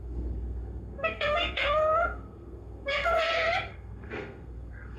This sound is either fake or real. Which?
fake